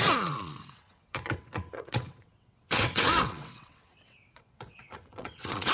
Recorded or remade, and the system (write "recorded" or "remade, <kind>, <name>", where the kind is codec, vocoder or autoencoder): remade, vocoder, WaveNeXt